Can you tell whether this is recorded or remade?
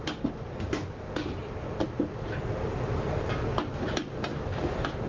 recorded